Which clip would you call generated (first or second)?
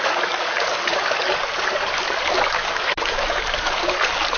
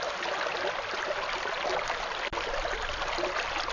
first